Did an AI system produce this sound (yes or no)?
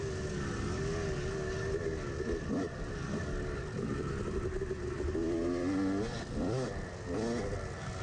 no